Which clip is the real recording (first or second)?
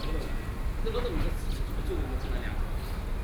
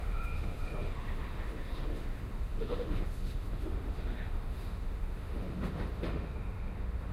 first